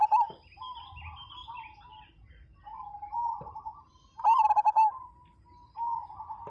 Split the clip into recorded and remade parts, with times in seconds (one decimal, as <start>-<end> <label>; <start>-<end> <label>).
0.0-1.4 recorded; 1.4-5.3 remade; 5.3-6.5 recorded